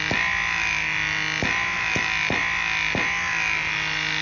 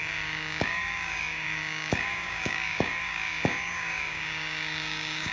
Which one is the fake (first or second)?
second